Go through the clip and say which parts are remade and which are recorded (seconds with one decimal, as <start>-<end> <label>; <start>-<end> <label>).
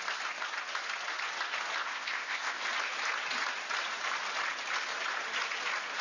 0.0-1.8 recorded; 1.8-2.6 remade; 2.6-6.0 recorded